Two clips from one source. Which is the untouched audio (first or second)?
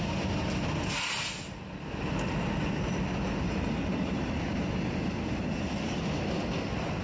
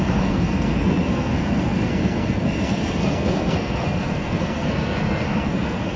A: first